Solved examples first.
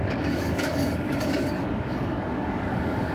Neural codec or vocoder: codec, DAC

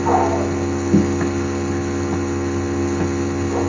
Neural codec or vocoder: none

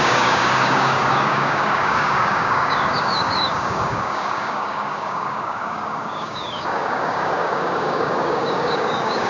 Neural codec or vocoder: codec, DAC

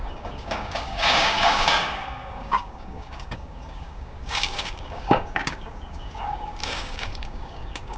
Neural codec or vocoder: codec, DAC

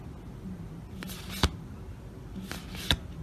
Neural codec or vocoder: none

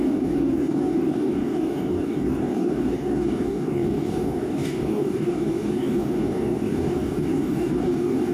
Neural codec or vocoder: codec, DAC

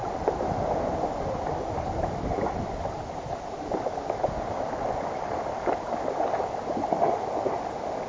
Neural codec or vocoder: none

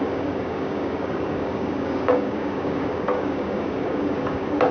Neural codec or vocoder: codec, DAC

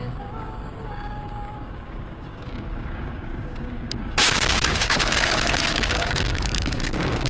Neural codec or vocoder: codec, DAC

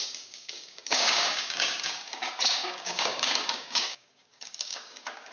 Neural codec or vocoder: codec, DAC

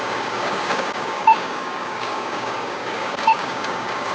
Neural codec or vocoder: codec, DAC